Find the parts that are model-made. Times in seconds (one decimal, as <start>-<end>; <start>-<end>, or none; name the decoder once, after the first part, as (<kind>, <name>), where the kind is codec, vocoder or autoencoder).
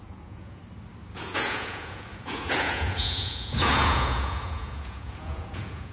0.0-0.6 (vocoder, Vocos); 1.1-5.9